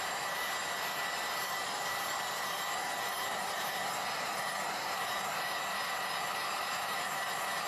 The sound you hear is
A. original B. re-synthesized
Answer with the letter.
B